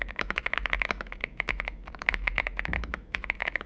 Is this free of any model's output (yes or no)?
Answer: no